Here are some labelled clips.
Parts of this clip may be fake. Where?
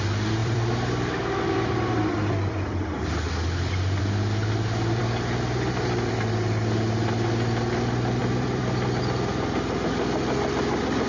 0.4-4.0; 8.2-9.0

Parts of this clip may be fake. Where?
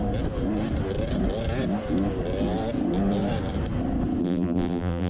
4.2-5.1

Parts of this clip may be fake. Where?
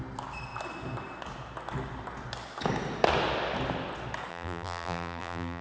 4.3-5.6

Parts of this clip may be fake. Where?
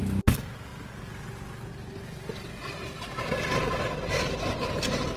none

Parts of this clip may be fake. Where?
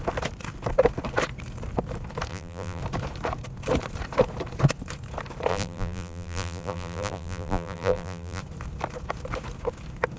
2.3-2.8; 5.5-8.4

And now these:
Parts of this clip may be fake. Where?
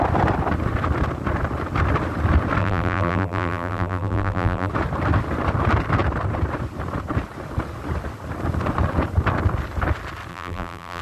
2.6-4.7; 10.3-11.0